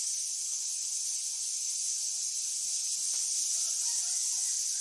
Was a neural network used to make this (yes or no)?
no